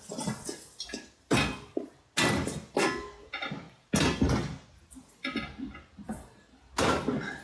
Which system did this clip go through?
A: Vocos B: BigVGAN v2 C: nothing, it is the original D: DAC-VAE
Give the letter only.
C